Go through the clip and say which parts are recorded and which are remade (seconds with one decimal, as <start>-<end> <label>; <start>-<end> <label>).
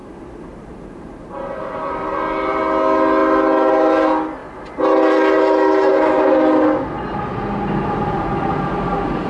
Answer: 0.0-2.6 remade; 2.6-9.3 recorded